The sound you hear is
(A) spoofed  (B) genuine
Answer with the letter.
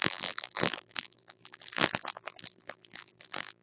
A